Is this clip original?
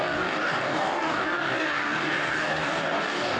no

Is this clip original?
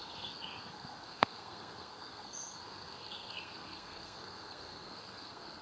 no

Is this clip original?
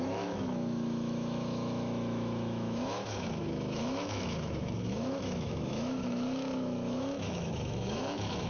no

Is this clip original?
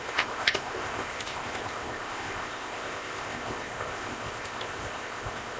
no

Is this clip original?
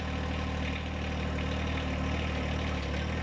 yes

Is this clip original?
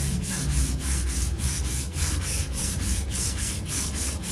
no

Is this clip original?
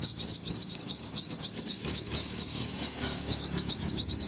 no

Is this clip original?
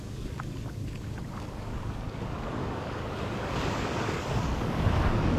no